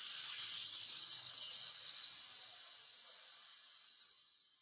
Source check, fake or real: real